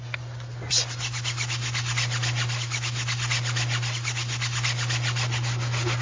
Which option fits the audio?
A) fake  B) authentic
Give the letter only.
B